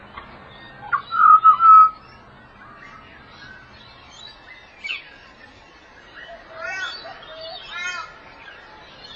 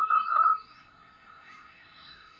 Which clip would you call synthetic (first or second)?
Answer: second